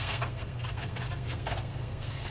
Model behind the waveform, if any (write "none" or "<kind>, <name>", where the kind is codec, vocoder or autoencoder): codec, SNAC